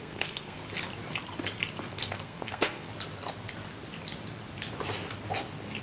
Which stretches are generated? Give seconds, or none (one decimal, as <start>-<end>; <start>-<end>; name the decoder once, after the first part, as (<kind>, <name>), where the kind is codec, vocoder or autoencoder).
0.0-0.6 (codec, SNAC); 1.9-2.9